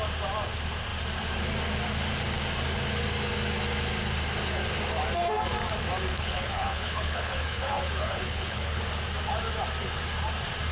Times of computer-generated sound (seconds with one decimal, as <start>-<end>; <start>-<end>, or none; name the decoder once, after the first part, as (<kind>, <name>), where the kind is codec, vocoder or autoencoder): 6.1-8.8 (codec, HILCodec)